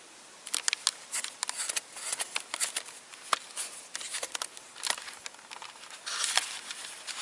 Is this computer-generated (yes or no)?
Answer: no